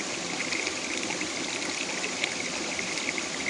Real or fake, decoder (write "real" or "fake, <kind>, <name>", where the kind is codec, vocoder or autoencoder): real